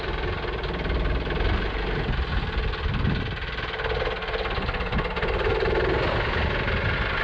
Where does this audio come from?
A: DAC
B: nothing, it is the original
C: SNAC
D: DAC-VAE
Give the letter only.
B